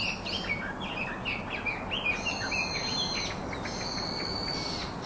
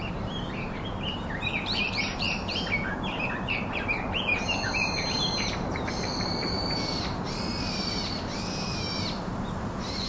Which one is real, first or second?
first